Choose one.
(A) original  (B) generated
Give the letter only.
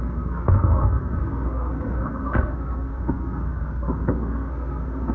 B